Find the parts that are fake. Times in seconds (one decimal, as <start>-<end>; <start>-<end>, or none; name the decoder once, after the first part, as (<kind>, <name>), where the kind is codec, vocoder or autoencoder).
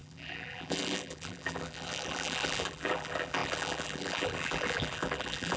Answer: 0.0-5.6 (vocoder, BigVGAN v2)